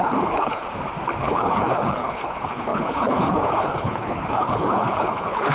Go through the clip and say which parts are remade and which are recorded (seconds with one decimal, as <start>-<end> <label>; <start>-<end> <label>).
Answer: 0.0-0.6 remade; 0.6-1.2 recorded; 1.2-5.5 remade